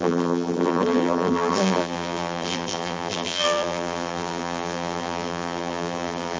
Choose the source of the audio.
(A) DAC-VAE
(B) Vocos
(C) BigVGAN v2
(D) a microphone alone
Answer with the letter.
C